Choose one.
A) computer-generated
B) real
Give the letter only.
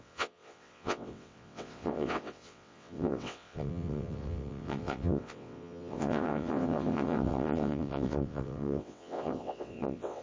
A